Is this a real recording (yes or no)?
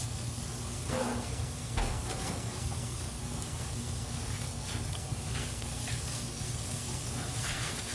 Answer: no